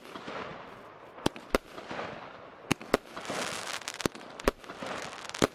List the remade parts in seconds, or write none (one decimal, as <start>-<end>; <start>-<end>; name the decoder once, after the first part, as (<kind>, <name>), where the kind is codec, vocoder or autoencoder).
none